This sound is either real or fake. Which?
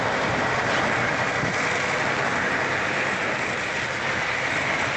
real